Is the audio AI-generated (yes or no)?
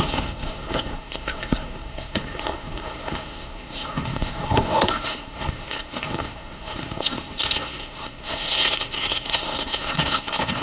yes